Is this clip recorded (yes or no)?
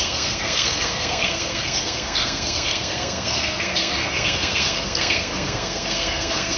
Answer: no